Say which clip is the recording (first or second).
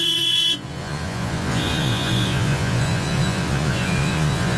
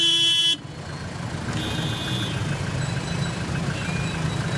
second